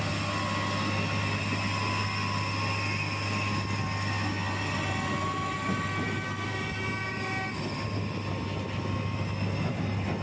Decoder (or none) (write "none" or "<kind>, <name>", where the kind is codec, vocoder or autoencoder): none